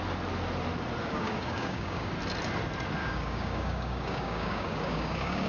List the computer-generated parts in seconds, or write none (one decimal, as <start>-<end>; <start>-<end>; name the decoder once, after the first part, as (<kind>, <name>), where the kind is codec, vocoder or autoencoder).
1.0-2.1 (codec, DAC); 3.0-5.5